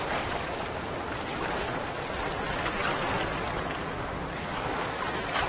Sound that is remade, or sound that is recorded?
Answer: recorded